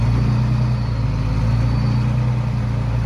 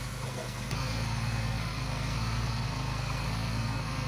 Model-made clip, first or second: second